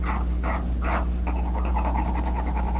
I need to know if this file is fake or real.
real